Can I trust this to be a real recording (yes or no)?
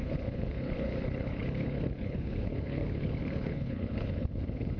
no